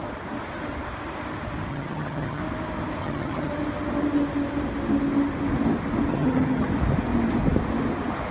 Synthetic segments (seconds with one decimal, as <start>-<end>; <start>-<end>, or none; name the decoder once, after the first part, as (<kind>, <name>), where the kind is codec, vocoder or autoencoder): 1.7-2.4 (vocoder, HiFi-GAN); 3.0-3.5; 6.1-6.7